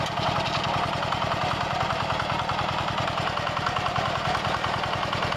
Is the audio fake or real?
real